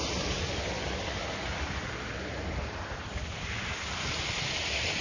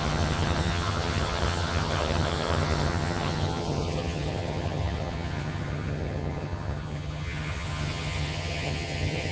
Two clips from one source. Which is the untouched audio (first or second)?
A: first